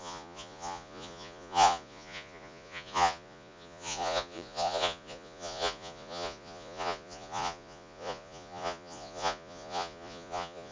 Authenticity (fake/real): fake